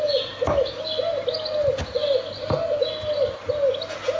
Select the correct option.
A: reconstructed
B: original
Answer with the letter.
B